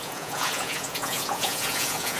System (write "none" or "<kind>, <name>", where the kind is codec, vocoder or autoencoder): vocoder, Vocos